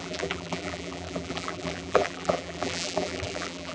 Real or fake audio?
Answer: fake